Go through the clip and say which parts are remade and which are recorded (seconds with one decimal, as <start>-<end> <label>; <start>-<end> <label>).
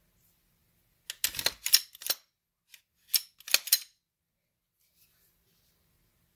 0.0-6.4 recorded